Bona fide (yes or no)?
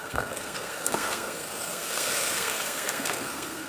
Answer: no